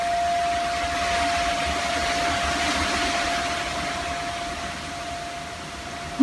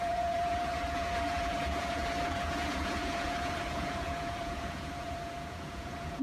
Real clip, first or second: first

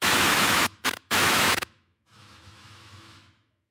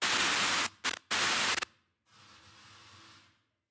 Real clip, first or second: second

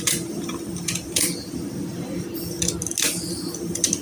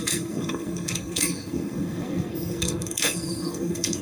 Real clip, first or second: first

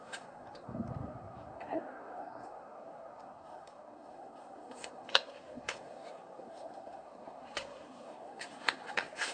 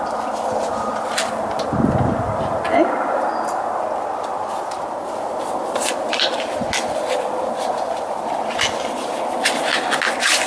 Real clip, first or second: second